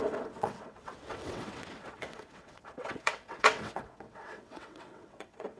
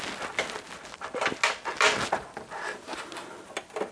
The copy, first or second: first